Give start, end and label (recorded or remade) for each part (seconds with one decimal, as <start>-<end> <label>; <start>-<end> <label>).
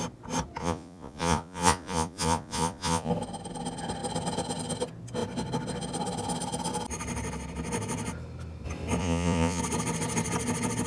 0.0-0.6 recorded; 0.6-3.1 remade; 3.1-9.0 recorded; 9.0-9.6 remade; 9.6-10.9 recorded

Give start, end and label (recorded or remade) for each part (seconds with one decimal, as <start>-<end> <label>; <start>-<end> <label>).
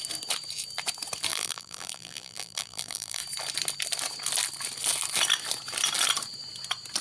0.0-1.3 recorded; 1.3-3.2 remade; 3.2-7.0 recorded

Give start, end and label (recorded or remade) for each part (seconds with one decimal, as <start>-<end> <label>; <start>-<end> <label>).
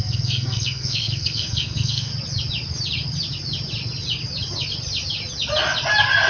0.0-2.1 remade; 2.1-6.3 recorded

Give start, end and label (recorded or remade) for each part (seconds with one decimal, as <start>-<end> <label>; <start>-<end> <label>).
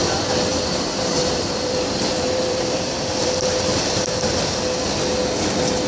0.0-0.5 recorded; 0.5-4.0 remade; 4.0-5.9 recorded